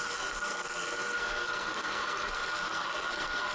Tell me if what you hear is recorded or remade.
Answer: remade